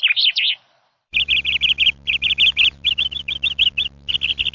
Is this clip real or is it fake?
fake